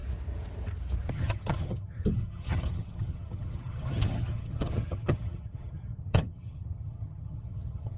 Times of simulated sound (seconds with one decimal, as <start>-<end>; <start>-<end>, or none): 1.1-8.0